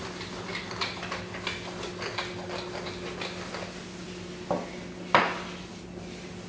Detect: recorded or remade recorded